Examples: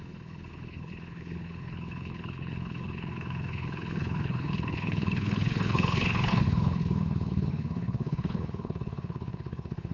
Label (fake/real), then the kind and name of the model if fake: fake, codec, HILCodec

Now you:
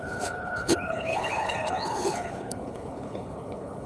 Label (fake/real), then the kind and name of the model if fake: fake, codec, HILCodec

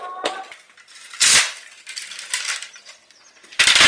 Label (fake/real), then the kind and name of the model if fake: real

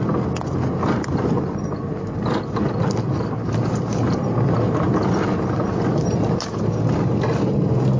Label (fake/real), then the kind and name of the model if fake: real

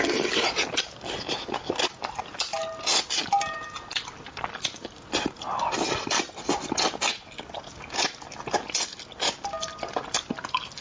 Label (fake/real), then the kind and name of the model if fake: real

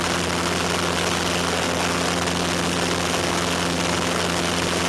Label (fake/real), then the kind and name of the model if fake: real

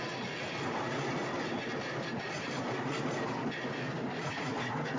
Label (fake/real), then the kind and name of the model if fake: real